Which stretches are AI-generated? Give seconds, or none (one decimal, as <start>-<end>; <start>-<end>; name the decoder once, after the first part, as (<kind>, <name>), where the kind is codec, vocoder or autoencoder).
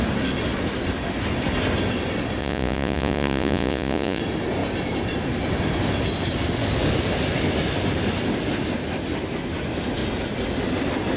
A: 2.4-4.2 (vocoder, Vocos)